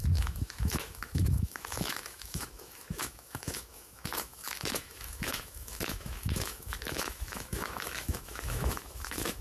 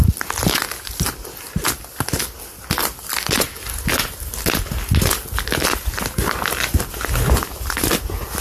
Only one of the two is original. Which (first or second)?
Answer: second